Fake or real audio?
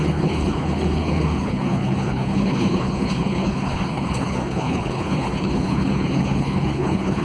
fake